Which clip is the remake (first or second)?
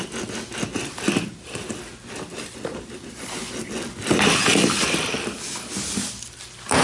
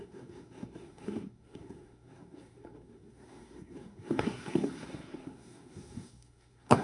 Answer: second